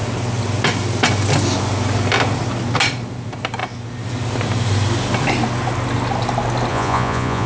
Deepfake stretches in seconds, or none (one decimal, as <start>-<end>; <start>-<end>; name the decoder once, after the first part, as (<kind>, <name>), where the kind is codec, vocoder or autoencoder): 6.7-7.5 (vocoder, Vocos)